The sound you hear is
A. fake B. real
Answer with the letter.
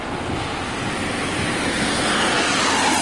B